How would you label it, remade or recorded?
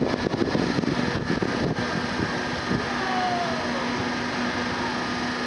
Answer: recorded